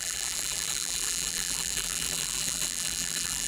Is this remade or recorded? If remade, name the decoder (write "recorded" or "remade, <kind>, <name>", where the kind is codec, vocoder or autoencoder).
remade, vocoder, BigVGAN v2